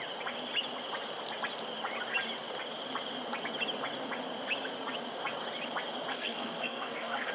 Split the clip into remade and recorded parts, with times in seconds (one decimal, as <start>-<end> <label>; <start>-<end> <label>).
0.0-6.1 recorded; 6.1-7.3 remade